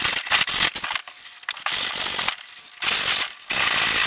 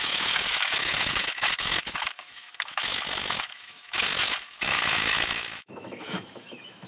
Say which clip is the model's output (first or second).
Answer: second